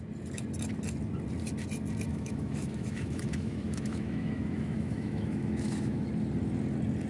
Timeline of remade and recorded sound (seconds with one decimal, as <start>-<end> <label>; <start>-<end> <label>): 0.0-2.1 recorded; 2.1-6.1 remade; 6.1-7.1 recorded